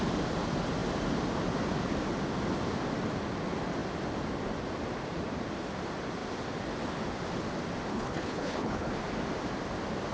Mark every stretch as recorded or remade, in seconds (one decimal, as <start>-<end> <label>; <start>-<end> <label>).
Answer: 0.0-7.9 recorded; 7.9-8.9 remade; 8.9-10.1 recorded